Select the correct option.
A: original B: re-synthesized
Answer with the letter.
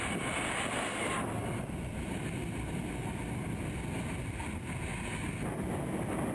A